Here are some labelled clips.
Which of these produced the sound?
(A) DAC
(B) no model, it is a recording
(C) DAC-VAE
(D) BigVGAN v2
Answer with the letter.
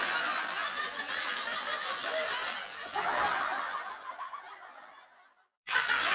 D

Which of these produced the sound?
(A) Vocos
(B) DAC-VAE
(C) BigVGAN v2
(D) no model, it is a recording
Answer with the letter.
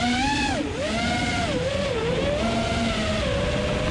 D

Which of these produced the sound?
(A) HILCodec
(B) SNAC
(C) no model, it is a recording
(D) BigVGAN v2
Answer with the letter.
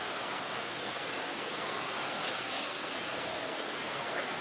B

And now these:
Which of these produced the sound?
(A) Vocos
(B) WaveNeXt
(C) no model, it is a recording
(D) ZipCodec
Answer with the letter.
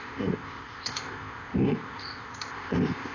D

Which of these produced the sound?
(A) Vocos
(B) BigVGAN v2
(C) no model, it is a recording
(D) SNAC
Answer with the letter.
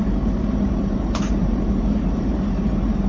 B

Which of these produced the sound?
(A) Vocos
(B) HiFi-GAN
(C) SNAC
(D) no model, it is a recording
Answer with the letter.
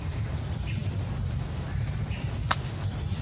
D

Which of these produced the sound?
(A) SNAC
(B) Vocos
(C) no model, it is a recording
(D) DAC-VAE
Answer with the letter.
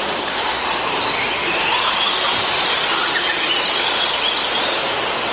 C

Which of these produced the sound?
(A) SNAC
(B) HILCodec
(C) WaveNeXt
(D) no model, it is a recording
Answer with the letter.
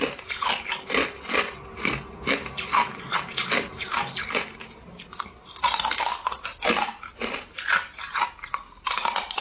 D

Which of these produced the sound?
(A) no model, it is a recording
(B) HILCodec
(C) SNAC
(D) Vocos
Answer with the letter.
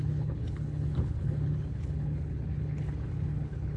B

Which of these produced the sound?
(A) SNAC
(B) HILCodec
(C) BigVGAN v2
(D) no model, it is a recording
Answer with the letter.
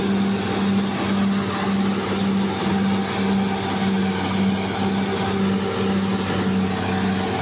D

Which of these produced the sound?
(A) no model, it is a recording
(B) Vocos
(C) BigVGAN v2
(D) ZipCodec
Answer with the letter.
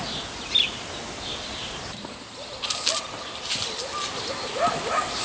A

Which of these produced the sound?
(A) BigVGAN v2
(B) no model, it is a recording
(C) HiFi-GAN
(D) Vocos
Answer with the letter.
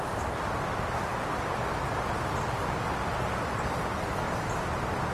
B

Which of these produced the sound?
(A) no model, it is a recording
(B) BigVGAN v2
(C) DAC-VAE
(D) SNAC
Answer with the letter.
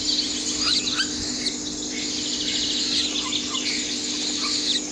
A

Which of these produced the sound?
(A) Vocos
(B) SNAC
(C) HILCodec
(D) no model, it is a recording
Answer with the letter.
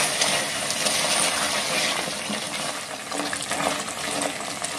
D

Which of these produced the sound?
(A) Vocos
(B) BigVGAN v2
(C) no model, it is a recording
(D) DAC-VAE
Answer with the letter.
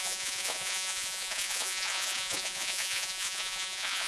A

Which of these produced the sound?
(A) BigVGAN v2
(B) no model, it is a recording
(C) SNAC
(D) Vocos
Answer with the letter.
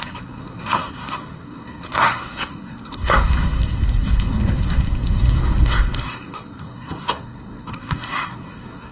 C